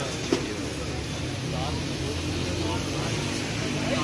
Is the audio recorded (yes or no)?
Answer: yes